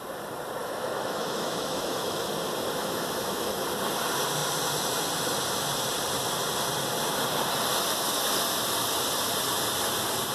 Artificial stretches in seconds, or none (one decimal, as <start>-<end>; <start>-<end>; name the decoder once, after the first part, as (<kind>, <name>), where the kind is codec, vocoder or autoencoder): 0.6-2.3 (autoencoder, DAC-VAE); 2.8-3.6